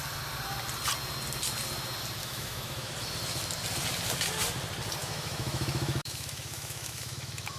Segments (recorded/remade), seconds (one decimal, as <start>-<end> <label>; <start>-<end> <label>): 0.0-2.2 recorded; 2.2-2.9 remade; 2.9-5.0 recorded; 5.0-7.6 remade